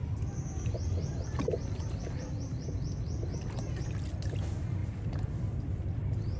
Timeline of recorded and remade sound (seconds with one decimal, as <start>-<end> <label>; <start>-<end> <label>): 0.0-3.8 remade; 3.8-4.8 recorded; 4.8-6.0 remade; 6.0-6.4 recorded